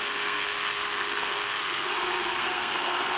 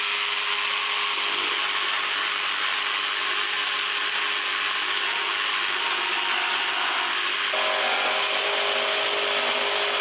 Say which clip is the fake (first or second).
first